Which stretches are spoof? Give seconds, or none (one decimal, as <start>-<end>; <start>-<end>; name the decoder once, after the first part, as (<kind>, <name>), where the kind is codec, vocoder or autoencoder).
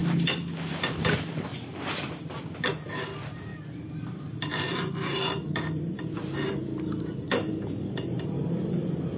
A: 0.7-1.5 (vocoder, BigVGAN v2); 2.4-9.2